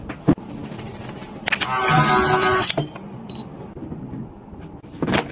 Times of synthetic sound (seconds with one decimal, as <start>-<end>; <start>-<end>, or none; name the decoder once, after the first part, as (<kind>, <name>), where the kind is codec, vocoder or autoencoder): none

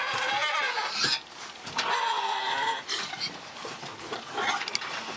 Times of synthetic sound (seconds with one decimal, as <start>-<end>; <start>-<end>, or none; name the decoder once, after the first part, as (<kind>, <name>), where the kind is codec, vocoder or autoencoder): none

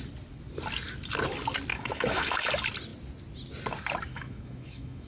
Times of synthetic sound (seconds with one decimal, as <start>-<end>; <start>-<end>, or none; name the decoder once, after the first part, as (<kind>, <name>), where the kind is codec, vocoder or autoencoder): 1.7-2.4 (autoencoder, DAC-VAE); 4.1-5.1

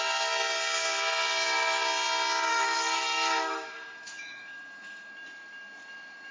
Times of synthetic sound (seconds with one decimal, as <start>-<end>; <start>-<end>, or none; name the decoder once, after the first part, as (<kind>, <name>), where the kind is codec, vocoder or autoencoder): 2.5-5.1 (autoencoder, DAC-VAE)